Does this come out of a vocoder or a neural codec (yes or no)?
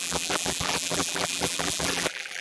yes